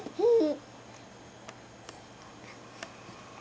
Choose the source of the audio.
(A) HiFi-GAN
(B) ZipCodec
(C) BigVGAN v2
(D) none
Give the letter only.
D